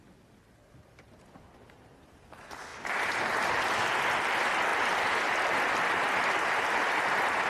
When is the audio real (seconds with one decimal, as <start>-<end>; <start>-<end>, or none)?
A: 0.0-7.5